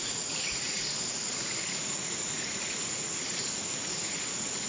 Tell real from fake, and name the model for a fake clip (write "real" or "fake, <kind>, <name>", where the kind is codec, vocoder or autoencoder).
fake, vocoder, Vocos